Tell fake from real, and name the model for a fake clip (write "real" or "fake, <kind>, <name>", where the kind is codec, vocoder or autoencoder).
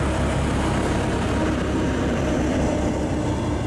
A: real